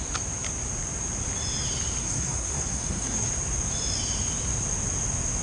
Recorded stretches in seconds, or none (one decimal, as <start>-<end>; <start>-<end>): 0.0-2.0; 3.3-5.4